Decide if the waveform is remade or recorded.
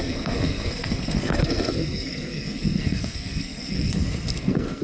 remade